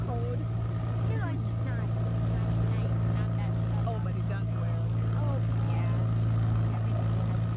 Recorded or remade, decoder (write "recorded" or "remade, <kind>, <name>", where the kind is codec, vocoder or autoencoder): recorded